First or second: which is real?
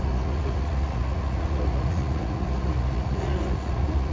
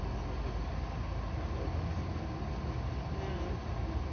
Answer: second